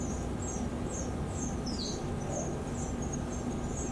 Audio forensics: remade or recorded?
recorded